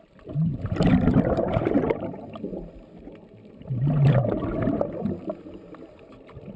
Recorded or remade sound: recorded